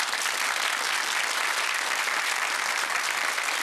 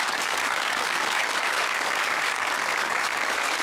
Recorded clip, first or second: first